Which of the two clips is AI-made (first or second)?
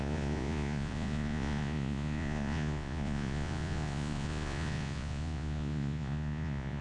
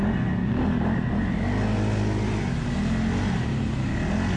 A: first